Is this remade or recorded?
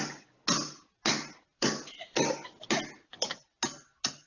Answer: recorded